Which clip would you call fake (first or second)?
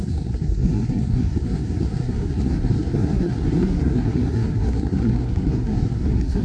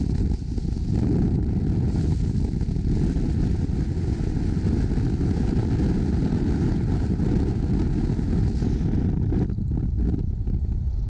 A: first